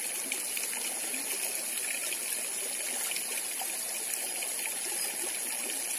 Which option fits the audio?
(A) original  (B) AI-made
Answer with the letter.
A